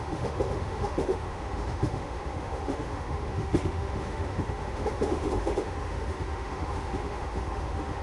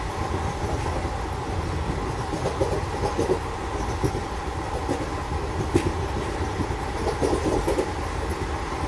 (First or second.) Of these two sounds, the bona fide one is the second